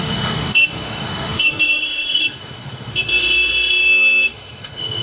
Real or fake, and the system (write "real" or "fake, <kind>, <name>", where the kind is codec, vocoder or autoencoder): fake, autoencoder, DAC-VAE